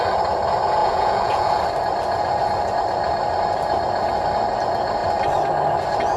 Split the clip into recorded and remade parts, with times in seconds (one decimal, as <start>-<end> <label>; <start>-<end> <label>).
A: 0.0-0.8 recorded; 0.8-1.6 remade; 1.6-6.2 recorded